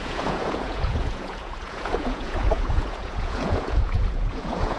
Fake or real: fake